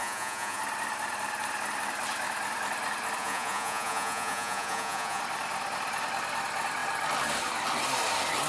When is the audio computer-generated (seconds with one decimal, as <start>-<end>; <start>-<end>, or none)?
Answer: 0.0-0.6; 3.2-5.2